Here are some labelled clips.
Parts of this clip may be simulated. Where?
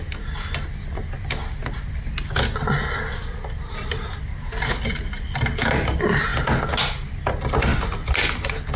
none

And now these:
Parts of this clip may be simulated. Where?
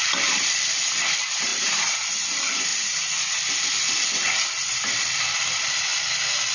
0.0-2.7 (vocoder, BigVGAN v2); 3.3-5.9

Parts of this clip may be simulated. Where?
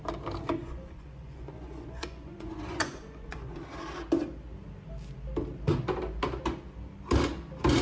0.6-3.6 (vocoder, Vocos)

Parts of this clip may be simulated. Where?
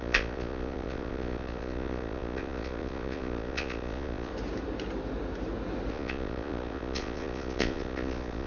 0.0-4.3 (vocoder, Vocos); 5.9-8.5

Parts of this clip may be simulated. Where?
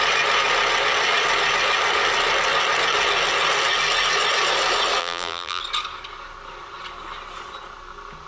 5.0-5.6 (vocoder, BigVGAN v2)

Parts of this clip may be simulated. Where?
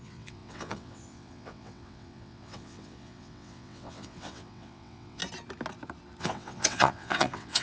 0.0-5.2 (vocoder, WaveNeXt); 6.2-7.6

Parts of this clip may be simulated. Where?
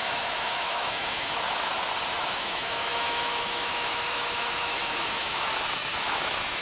0.0-1.7 (autoencoder, DAC-VAE); 2.2-6.6